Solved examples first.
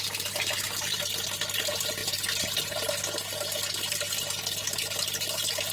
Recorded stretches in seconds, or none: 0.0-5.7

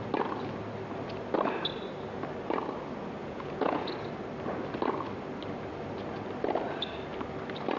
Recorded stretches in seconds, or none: 0.0-3.2; 3.8-7.8

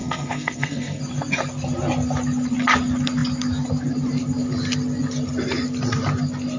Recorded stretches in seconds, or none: 1.0-6.6

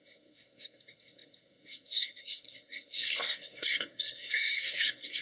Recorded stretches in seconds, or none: none

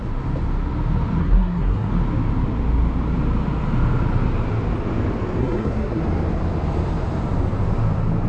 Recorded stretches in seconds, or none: 0.0-1.2; 1.9-5.4; 6.0-8.3

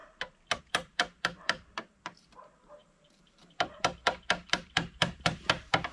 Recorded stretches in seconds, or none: 0.0-0.6

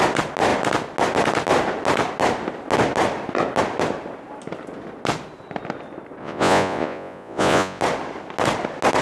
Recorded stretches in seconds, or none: 0.0-6.2; 7.8-9.0

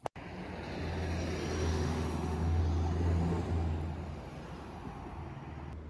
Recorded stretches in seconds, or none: 0.0-1.7; 2.6-5.9